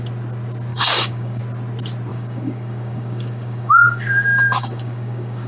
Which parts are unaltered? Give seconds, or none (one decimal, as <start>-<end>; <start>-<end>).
0.0-0.7; 1.4-2.1